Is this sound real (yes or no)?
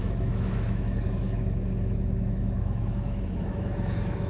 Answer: no